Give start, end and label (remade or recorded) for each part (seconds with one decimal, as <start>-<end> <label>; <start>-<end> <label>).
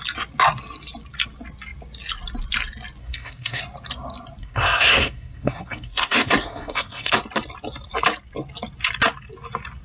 0.0-3.0 recorded; 3.0-3.6 remade; 3.6-4.4 recorded; 4.4-7.1 remade; 7.1-9.8 recorded